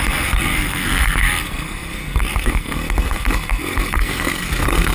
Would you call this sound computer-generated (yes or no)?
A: yes